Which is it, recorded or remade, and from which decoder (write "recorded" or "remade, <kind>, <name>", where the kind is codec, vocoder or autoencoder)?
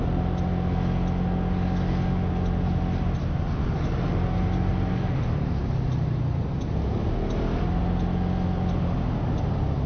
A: recorded